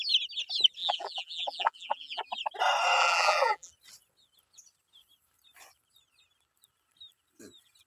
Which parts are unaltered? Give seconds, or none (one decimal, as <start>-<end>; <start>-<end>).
0.0-0.8; 2.2-3.0; 3.7-7.9